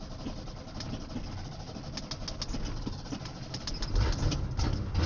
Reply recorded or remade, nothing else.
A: recorded